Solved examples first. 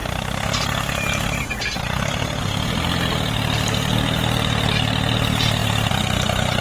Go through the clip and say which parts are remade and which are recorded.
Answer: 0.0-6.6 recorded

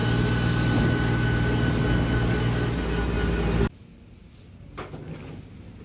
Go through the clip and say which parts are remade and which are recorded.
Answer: 0.0-5.8 recorded

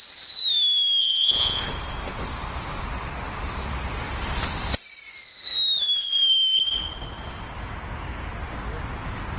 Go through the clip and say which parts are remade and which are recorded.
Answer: 0.0-1.0 recorded; 1.0-1.6 remade; 1.6-9.4 recorded

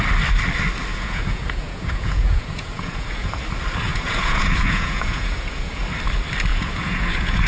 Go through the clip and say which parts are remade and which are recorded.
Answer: 0.0-0.9 recorded; 0.9-3.4 remade; 3.4-3.9 recorded; 3.9-5.8 remade; 5.8-6.5 recorded; 6.5-7.5 remade

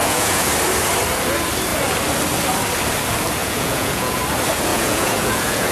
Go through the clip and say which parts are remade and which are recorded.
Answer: 0.0-0.5 remade; 0.5-3.4 recorded; 3.4-4.2 remade; 4.2-4.7 recorded; 4.7-5.7 remade

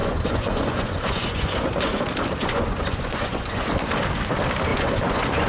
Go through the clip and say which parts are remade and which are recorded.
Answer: 0.0-2.0 remade; 2.0-2.4 recorded; 2.4-3.7 remade; 3.7-4.7 recorded; 4.7-5.5 remade

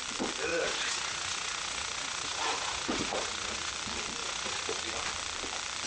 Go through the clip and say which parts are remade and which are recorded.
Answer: 0.0-0.5 recorded; 0.5-3.7 remade; 3.7-4.2 recorded; 4.2-4.8 remade; 4.8-5.9 recorded